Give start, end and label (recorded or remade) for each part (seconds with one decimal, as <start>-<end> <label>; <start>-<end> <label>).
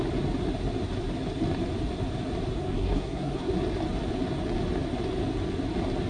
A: 0.0-2.6 recorded; 2.6-3.5 remade; 3.5-6.1 recorded